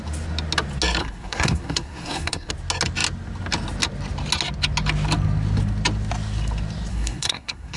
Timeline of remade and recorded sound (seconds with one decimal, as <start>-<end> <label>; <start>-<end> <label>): 0.0-1.0 recorded; 1.0-2.5 remade; 2.5-6.9 recorded; 6.9-7.8 remade